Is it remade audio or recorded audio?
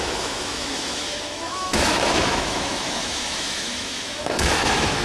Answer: remade